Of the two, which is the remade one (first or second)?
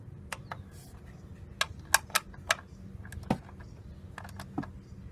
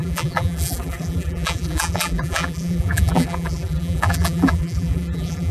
second